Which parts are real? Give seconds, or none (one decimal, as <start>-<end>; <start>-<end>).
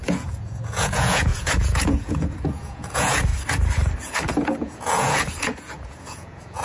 3.3-4.0